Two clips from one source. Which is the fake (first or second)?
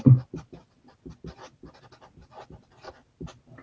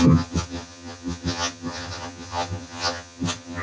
second